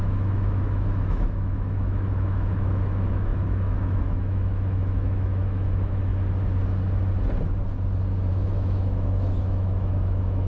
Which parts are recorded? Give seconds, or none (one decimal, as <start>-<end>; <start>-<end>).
6.1-8.3